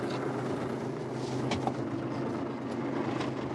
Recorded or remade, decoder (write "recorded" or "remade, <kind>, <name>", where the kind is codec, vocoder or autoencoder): recorded